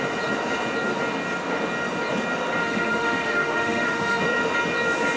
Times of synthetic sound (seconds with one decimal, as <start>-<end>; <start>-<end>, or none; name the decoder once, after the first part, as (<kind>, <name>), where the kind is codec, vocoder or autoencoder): 2.6-4.2 (autoencoder, DAC-VAE)